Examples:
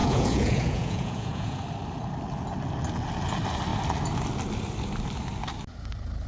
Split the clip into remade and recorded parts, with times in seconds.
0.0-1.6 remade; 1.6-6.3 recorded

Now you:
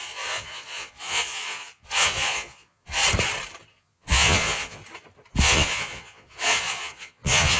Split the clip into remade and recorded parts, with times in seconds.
0.0-3.0 remade; 3.0-3.7 recorded; 3.7-4.8 remade; 4.8-5.4 recorded; 5.4-7.6 remade

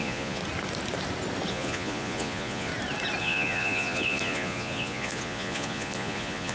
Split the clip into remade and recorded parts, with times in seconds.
0.0-0.4 remade; 0.4-1.5 recorded; 1.5-2.7 remade; 2.7-3.2 recorded; 3.2-6.5 remade

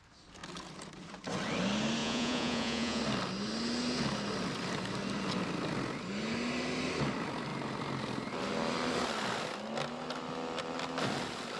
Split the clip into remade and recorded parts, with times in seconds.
0.0-2.0 recorded; 2.0-3.0 remade; 3.0-11.6 recorded

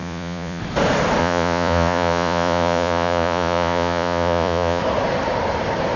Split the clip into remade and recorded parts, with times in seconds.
0.0-0.6 remade; 0.6-1.2 recorded; 1.2-4.8 remade; 4.8-6.0 recorded

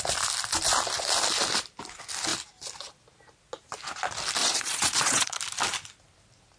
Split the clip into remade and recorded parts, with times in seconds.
0.0-4.4 recorded; 4.4-5.4 remade; 5.4-6.6 recorded